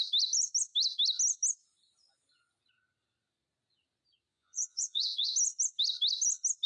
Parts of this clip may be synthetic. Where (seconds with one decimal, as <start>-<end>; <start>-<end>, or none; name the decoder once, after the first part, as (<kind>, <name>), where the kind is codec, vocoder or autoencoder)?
4.3-5.3 (vocoder, Vocos)